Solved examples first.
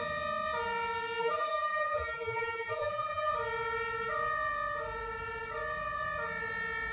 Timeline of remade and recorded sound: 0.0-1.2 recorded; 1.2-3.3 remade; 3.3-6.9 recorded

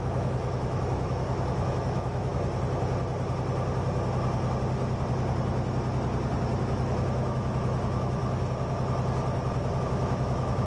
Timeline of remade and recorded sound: 0.0-2.3 remade; 2.3-6.6 recorded; 6.6-8.2 remade; 8.2-9.8 recorded; 9.8-10.7 remade

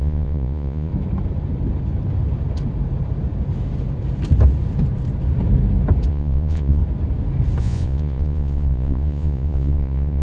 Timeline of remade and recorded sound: 0.0-0.9 remade; 0.9-6.1 recorded; 6.1-6.8 remade; 6.8-7.6 recorded; 7.6-10.2 remade

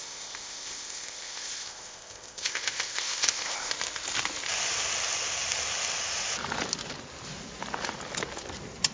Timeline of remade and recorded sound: 0.0-3.7 remade; 3.7-8.9 recorded